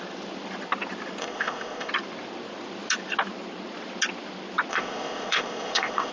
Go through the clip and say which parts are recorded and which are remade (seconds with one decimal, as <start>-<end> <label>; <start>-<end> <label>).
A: 0.0-1.2 recorded; 1.2-1.9 remade; 1.9-4.7 recorded; 4.7-6.1 remade